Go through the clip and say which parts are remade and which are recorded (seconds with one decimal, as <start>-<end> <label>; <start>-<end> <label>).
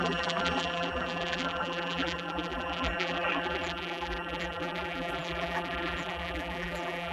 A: 0.0-7.1 remade